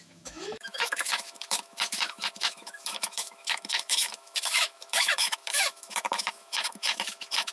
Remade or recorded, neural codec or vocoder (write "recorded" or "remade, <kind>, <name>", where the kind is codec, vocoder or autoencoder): remade, autoencoder, DAC-VAE